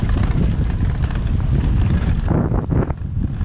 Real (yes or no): yes